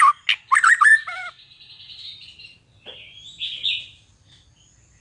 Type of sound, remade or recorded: recorded